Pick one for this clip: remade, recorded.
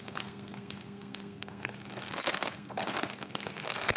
remade